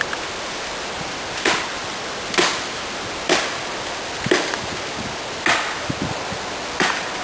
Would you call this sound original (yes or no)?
yes